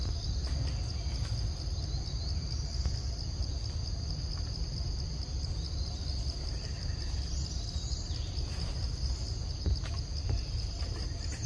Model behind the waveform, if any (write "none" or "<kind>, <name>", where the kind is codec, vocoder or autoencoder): none